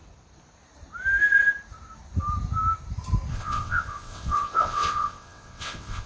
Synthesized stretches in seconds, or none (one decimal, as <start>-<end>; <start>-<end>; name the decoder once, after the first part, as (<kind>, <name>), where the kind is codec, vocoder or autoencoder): 3.3-6.1 (vocoder, WaveNeXt)